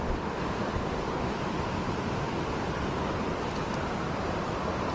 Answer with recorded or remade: remade